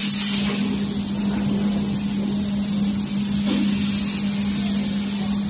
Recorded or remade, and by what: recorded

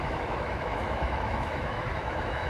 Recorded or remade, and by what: remade, autoencoder, DAC-VAE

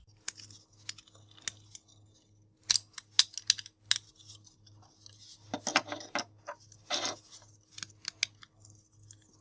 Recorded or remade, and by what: recorded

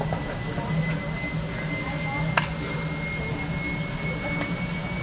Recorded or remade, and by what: recorded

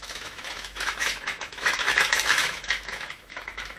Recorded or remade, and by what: remade, autoencoder, DAC-VAE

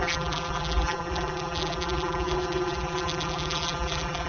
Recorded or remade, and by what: remade, vocoder, BigVGAN v2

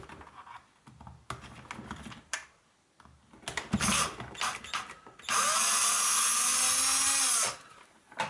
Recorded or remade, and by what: recorded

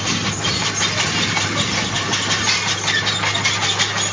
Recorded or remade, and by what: recorded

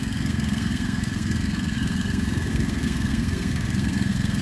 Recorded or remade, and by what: remade, codec, SNAC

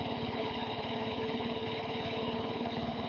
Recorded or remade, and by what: remade, codec, HILCodec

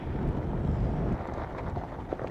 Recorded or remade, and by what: recorded